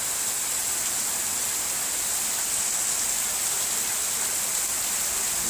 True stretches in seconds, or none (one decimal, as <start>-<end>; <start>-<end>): 0.0-5.5